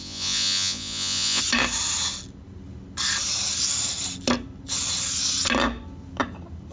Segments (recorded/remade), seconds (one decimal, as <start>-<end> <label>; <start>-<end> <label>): 0.0-1.4 remade; 1.4-6.7 recorded